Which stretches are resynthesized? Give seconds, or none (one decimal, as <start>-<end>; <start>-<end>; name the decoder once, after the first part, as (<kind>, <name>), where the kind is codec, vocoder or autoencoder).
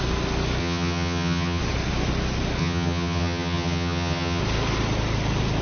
0.6-1.6 (vocoder, HiFi-GAN); 2.6-4.4